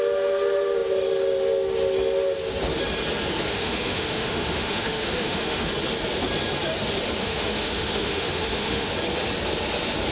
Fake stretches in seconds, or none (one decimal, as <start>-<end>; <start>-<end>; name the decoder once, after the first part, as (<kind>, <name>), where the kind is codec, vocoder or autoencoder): 3.5-5.7 (autoencoder, DAC-VAE); 7.2-8.9